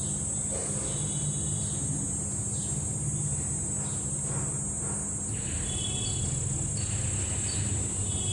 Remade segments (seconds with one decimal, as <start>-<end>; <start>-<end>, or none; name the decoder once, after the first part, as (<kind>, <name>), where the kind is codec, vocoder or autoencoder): none

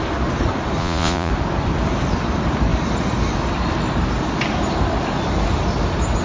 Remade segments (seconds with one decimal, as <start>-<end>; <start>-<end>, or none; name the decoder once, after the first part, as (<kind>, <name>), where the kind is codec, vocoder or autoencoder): 0.8-1.3 (vocoder, Vocos)